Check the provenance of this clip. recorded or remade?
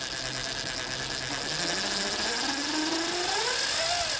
recorded